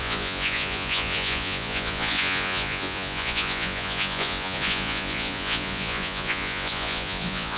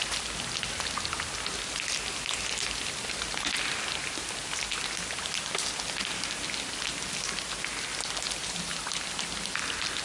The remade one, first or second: first